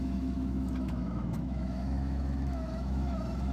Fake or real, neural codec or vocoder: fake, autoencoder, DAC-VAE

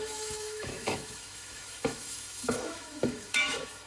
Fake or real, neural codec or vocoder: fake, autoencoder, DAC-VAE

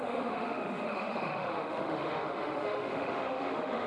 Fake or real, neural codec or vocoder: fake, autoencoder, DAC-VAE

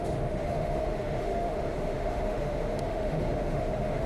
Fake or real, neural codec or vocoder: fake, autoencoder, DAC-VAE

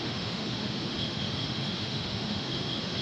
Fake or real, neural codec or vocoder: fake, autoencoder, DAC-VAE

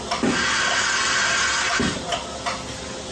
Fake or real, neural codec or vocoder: real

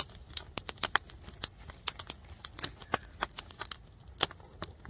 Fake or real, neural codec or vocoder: real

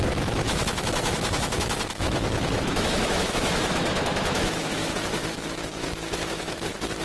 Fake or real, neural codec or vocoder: fake, autoencoder, DAC-VAE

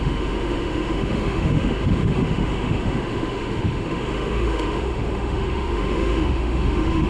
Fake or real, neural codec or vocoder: fake, autoencoder, DAC-VAE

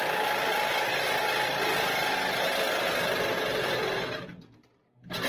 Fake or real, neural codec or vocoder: real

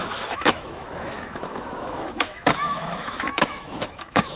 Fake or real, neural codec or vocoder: fake, autoencoder, DAC-VAE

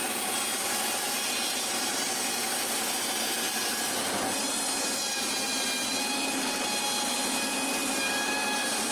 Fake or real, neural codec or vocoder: real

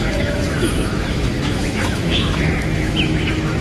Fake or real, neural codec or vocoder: fake, autoencoder, DAC-VAE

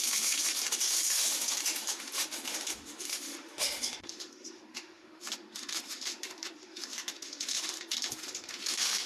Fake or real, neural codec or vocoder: fake, autoencoder, DAC-VAE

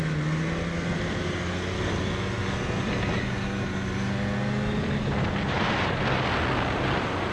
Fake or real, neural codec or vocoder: real